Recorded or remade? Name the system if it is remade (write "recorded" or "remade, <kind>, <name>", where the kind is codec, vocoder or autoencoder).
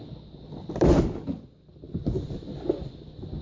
recorded